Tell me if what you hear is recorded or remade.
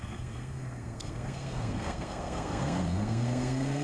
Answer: remade